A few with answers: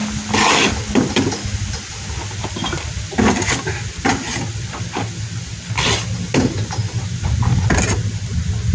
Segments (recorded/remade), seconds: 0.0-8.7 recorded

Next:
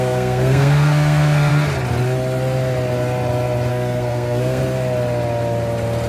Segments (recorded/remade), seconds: 0.0-1.5 remade; 1.5-3.7 recorded; 3.7-4.6 remade; 4.6-6.1 recorded

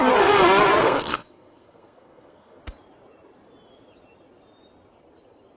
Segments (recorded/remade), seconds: 0.0-0.8 recorded; 0.8-2.6 remade; 2.6-5.6 recorded

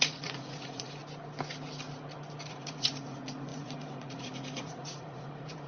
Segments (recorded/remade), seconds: 0.0-1.0 remade; 1.0-2.5 recorded; 2.5-5.7 remade

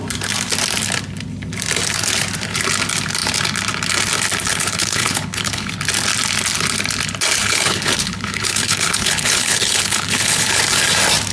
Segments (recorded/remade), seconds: 0.0-4.5 recorded; 4.5-5.7 remade; 5.7-7.4 recorded; 7.4-10.6 remade; 10.6-11.3 recorded